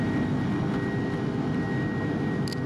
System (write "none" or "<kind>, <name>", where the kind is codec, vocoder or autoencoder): none